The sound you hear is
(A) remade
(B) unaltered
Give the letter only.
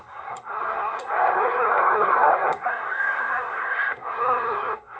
A